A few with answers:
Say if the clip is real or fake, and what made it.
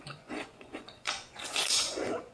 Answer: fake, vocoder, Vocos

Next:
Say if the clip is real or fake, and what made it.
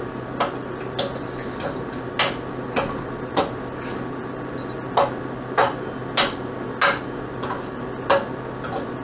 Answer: real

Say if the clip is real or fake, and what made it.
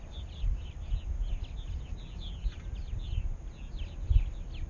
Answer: real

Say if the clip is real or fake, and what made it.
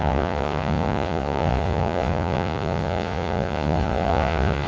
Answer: fake, vocoder, Vocos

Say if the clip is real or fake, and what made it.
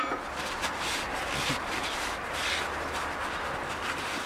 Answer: real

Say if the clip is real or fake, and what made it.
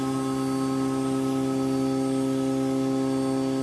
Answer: real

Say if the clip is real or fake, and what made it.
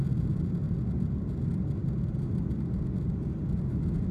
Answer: real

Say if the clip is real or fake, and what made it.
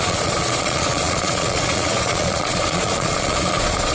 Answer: fake, vocoder, Vocos